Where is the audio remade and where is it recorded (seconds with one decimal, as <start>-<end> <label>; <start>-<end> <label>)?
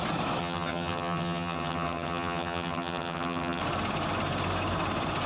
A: 0.0-0.4 recorded; 0.4-3.6 remade; 3.6-5.3 recorded